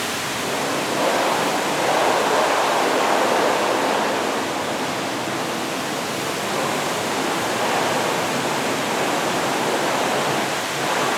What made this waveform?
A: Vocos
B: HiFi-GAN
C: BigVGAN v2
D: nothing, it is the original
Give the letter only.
D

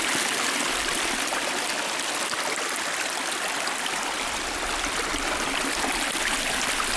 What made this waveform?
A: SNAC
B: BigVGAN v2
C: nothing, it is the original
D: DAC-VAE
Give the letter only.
C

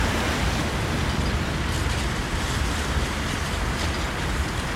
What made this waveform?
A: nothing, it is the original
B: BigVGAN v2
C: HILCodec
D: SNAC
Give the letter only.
B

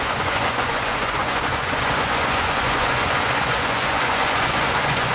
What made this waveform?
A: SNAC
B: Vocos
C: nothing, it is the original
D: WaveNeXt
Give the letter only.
B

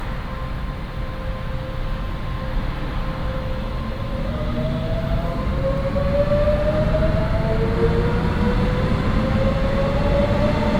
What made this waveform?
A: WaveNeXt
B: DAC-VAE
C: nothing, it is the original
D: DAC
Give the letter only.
C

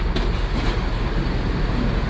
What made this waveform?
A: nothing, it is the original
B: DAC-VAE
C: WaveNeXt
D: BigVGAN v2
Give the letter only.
A